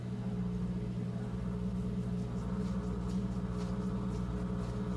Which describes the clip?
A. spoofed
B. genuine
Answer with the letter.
B